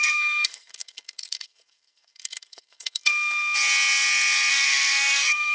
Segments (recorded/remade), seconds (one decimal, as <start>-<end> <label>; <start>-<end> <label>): 0.0-3.1 remade; 3.1-4.5 recorded; 4.5-5.5 remade